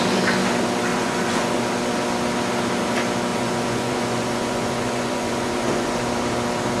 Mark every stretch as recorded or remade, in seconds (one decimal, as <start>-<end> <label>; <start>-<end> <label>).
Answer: 0.0-0.9 recorded; 0.9-1.6 remade; 1.6-3.3 recorded; 3.3-6.0 remade; 6.0-6.8 recorded